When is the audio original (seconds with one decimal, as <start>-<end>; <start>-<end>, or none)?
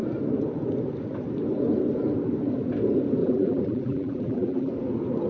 0.0-3.2; 4.7-5.3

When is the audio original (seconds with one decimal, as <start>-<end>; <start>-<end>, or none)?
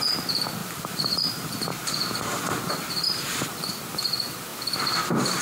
0.0-0.6; 3.8-5.4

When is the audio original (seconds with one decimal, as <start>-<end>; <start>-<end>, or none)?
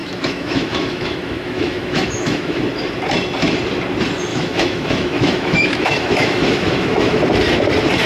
2.6-4.3; 7.2-8.1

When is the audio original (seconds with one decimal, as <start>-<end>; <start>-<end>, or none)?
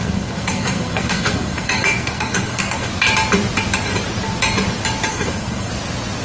2.9-5.1; 5.7-6.2